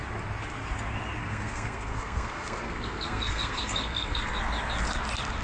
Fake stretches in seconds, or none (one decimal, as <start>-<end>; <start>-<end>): 1.2-4.4